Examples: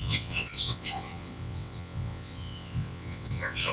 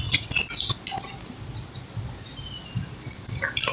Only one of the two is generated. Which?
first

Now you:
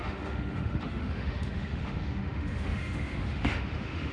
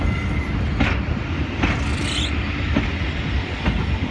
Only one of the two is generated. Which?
first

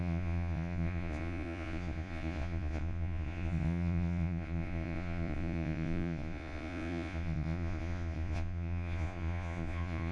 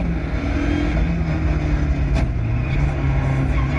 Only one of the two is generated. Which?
first